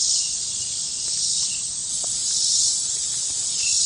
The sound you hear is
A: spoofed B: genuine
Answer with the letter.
A